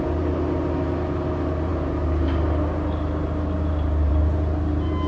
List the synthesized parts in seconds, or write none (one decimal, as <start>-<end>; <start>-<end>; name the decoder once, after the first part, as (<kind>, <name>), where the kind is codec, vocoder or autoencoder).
none